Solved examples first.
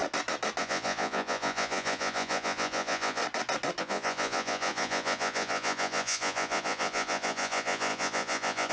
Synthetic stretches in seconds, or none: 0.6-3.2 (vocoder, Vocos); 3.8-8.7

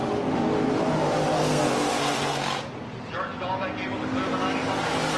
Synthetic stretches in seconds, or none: 1.4-2.6 (codec, SNAC)

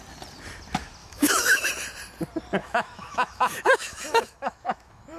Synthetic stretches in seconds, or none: 1.0-1.7 (autoencoder, DAC-VAE); 2.6-5.2